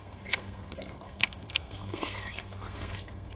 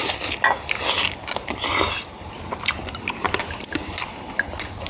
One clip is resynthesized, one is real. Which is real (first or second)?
second